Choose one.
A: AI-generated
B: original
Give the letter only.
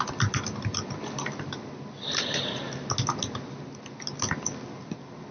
B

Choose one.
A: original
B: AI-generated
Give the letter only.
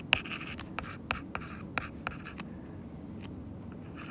A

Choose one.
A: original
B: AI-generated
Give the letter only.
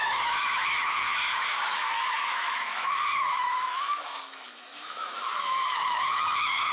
B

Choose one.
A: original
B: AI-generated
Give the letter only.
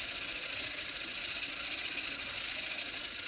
A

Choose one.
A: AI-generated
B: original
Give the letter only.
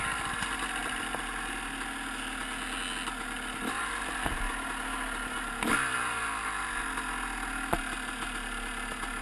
B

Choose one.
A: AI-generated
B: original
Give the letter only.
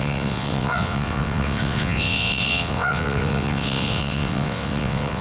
A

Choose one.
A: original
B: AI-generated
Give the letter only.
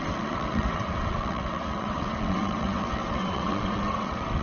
B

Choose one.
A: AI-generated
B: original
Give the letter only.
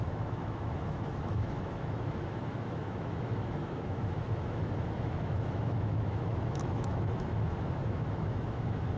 A